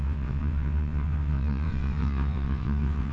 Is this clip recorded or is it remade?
remade